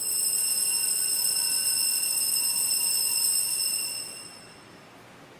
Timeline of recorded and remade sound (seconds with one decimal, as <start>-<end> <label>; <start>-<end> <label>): 0.0-5.4 recorded

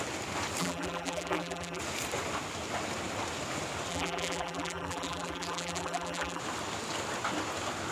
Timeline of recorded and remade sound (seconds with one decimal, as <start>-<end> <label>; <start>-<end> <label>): 0.0-0.6 recorded; 0.6-1.8 remade; 1.8-3.9 recorded; 3.9-6.4 remade; 6.4-7.9 recorded

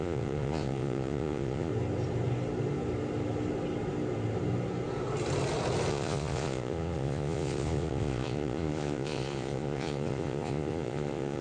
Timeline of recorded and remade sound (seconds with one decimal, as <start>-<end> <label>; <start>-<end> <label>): 0.0-1.7 remade; 1.7-5.9 recorded; 5.9-11.4 remade

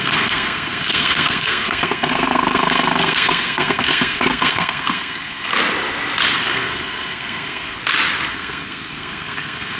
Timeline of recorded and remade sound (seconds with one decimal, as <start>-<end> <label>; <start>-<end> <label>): 0.0-5.5 remade; 5.5-6.3 recorded; 6.3-7.8 remade; 7.8-8.3 recorded; 8.3-9.8 remade

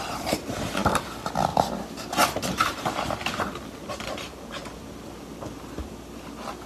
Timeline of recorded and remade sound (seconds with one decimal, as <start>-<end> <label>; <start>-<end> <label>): 0.0-6.7 recorded

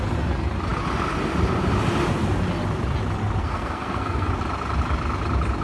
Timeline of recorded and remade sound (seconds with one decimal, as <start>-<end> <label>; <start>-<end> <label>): 0.0-3.4 recorded; 3.4-4.3 remade; 4.3-5.6 recorded